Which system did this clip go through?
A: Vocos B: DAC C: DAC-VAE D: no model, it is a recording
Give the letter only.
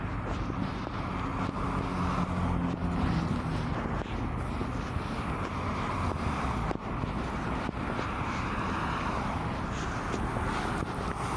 D